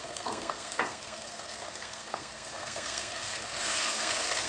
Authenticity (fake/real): fake